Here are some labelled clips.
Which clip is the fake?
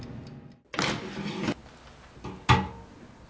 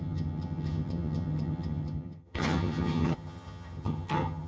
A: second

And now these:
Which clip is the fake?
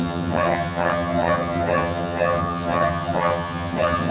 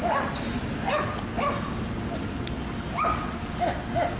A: first